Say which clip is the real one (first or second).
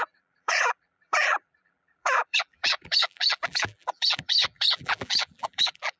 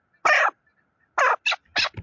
second